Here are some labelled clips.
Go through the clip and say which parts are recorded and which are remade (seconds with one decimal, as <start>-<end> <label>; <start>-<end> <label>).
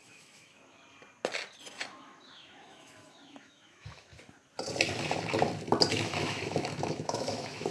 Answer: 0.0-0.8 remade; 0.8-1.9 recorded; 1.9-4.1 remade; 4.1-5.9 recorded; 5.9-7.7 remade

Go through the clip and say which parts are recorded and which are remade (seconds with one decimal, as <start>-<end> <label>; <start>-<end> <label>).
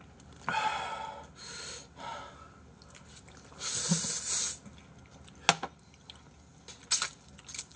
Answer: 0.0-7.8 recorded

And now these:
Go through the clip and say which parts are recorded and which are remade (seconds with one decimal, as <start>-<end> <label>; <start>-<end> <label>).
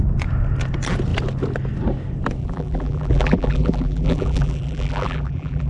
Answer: 0.0-2.4 recorded; 2.4-5.7 remade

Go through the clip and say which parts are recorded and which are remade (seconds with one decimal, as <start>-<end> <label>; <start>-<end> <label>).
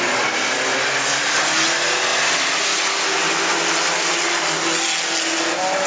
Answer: 0.0-5.9 recorded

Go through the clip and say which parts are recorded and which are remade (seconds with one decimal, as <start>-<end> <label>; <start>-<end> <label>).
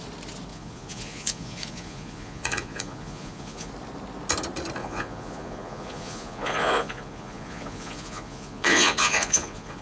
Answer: 0.0-0.5 recorded; 0.5-3.7 remade; 3.7-4.8 recorded; 4.8-9.8 remade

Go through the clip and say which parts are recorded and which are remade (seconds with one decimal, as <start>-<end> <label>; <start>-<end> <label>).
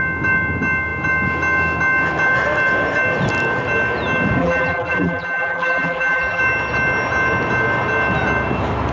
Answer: 0.0-4.4 recorded; 4.4-6.4 remade; 6.4-8.9 recorded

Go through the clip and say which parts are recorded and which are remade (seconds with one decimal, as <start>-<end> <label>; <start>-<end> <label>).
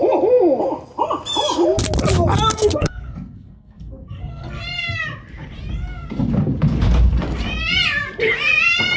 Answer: 0.0-2.5 recorded; 2.5-4.6 remade; 4.6-9.0 recorded